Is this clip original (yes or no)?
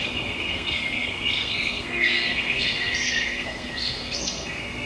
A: no